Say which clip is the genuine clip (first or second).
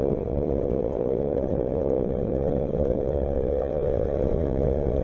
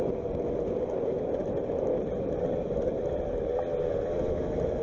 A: second